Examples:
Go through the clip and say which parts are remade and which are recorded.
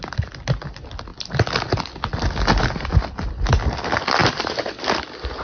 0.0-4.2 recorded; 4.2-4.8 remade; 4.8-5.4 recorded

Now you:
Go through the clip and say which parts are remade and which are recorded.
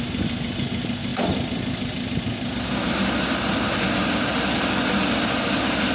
0.0-5.9 recorded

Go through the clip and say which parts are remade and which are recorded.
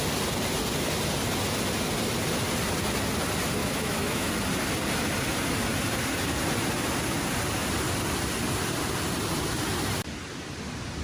0.0-3.6 recorded; 3.6-4.3 remade; 4.3-11.0 recorded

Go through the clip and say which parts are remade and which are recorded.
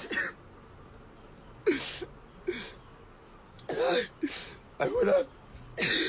0.0-6.1 recorded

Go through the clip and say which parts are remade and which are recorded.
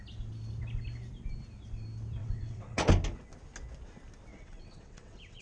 0.0-2.2 recorded; 2.2-2.9 remade; 2.9-4.3 recorded; 4.3-5.4 remade